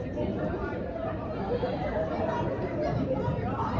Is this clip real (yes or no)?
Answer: no